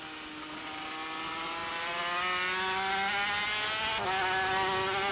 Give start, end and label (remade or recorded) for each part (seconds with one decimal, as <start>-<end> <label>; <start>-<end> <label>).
0.0-5.1 recorded